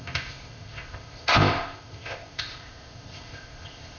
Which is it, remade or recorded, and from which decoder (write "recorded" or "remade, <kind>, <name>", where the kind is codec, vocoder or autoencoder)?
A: remade, codec, ZipCodec